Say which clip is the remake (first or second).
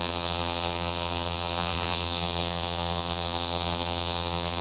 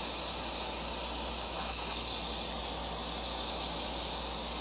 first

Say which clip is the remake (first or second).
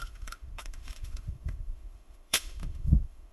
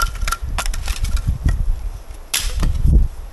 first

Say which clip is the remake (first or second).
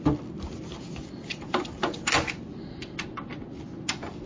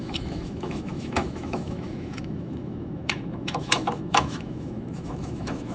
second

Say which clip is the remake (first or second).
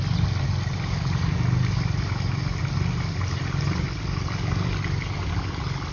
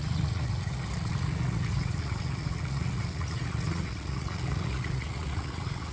second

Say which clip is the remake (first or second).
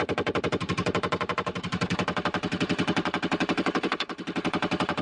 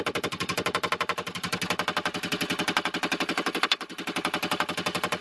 first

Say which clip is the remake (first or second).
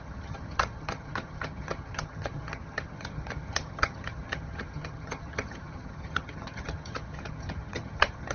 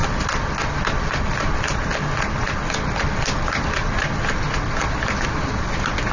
first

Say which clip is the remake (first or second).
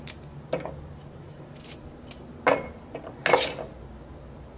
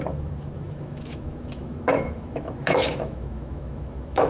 second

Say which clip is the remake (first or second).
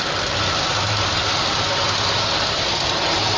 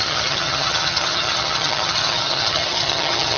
second